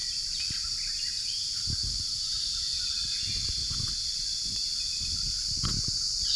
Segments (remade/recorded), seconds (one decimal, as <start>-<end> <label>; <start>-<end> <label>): 0.0-1.8 recorded; 1.8-2.9 remade; 2.9-3.6 recorded; 3.6-4.7 remade; 4.7-6.4 recorded